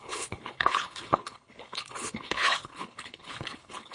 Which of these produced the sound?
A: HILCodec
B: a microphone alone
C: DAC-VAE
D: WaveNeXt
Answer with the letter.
A